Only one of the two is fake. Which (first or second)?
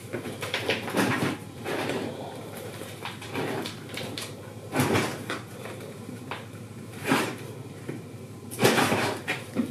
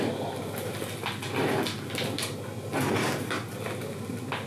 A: first